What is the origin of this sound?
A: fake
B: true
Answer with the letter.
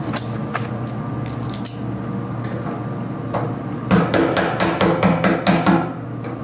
B